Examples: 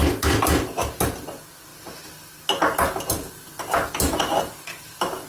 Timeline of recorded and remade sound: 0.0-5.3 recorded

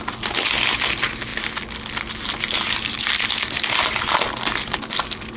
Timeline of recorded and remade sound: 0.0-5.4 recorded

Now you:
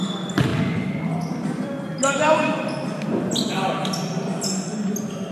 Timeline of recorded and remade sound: 0.0-0.5 remade; 0.5-1.3 recorded; 1.3-3.8 remade; 3.8-5.3 recorded

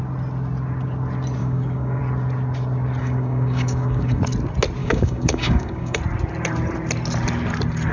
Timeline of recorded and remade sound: 0.0-1.4 recorded; 1.4-2.0 remade; 2.0-3.0 recorded; 3.0-4.2 remade; 4.2-4.8 recorded; 4.8-6.0 remade; 6.0-7.9 recorded

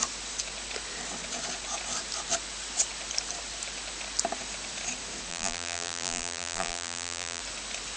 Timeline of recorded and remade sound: 0.0-5.3 recorded; 5.3-7.4 remade; 7.4-8.0 recorded

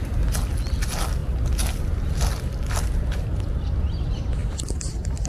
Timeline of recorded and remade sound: 0.0-5.3 recorded

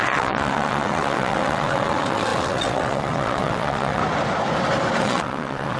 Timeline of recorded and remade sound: 0.0-4.0 remade; 4.0-5.0 recorded; 5.0-5.8 remade

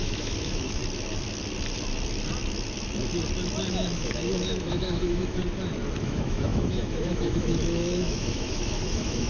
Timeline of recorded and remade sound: 0.0-0.8 remade; 0.8-3.7 recorded; 3.7-5.4 remade; 5.4-6.0 recorded; 6.0-9.3 remade